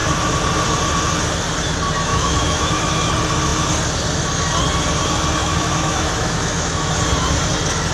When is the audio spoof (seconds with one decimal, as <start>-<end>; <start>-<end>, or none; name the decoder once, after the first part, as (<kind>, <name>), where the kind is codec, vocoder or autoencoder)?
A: 2.1-3.1 (autoencoder, DAC-VAE); 5.4-6.9

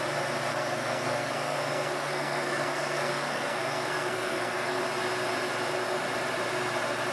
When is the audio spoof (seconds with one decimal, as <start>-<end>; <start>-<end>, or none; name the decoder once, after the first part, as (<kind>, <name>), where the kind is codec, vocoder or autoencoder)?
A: 0.5-4.8 (codec, SNAC)

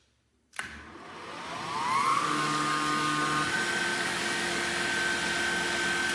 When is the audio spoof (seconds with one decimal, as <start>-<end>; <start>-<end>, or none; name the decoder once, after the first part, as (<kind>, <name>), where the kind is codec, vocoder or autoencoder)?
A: 2.1-3.2 (codec, DAC); 3.9-4.7